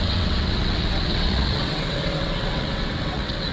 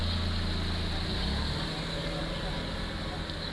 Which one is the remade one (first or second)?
first